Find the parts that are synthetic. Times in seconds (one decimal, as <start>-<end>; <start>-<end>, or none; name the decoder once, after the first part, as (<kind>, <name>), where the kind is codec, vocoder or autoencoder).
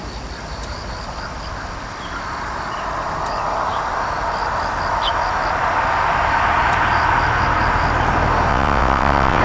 8.5-9.4 (vocoder, WaveNeXt)